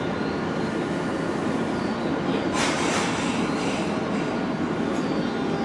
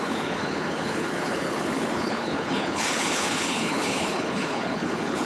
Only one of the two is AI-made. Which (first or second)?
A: second